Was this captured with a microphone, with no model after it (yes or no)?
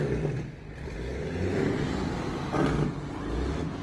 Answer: yes